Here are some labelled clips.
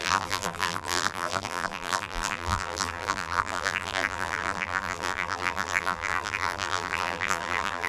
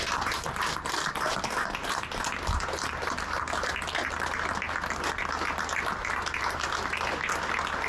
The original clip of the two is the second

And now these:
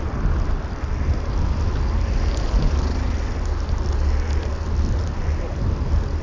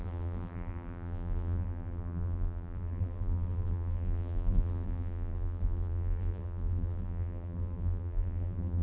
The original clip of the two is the first